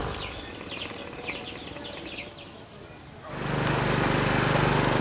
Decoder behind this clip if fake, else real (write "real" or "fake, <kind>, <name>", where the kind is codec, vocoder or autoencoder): real